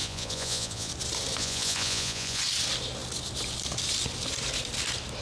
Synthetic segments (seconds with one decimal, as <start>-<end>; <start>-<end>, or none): 0.0-0.9; 1.4-2.4

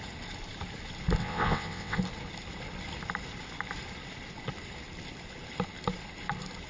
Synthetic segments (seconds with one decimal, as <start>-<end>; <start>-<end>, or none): 1.2-2.0

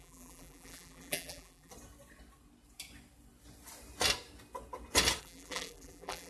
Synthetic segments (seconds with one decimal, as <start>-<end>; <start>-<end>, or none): 0.0-1.7; 5.2-6.3

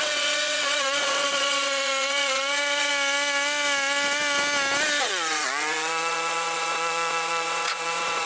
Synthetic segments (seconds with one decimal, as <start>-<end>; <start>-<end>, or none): 0.0-2.9; 5.0-8.3

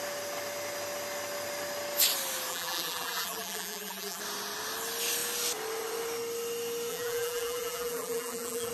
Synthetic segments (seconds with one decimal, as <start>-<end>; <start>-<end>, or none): 2.5-4.2; 6.9-8.7

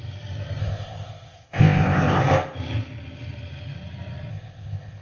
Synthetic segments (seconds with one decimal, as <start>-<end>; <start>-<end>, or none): 0.6-2.2; 4.3-5.0